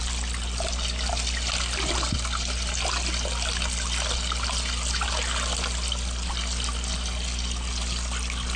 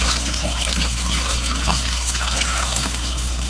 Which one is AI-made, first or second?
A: second